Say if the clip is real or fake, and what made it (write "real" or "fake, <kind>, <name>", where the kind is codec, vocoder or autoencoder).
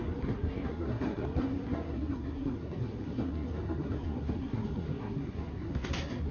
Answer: fake, codec, SNAC